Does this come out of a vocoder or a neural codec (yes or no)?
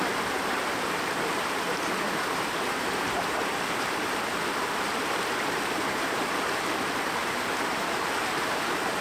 yes